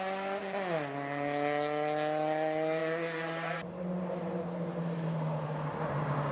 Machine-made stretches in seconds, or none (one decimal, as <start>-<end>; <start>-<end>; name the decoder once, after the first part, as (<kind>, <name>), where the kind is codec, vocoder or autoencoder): none